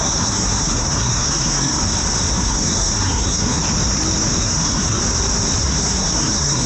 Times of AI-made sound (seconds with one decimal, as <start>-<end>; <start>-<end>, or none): 0.0-1.8; 2.3-3.6; 4.4-5.0; 5.6-6.7